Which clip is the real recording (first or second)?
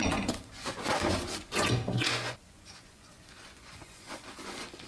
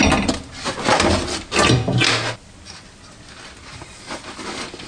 second